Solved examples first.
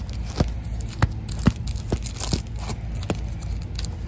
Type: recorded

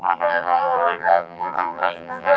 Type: remade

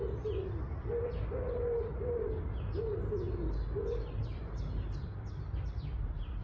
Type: recorded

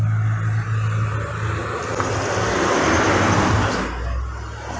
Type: recorded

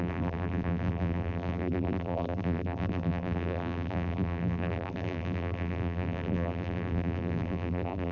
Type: remade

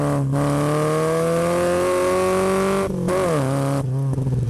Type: recorded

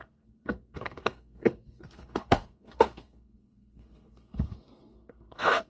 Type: remade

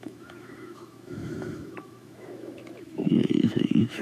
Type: remade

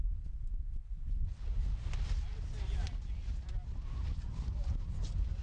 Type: recorded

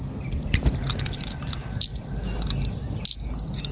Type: recorded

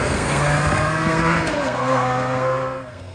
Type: remade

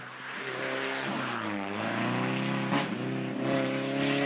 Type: recorded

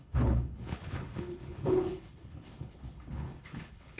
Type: remade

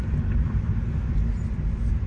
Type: recorded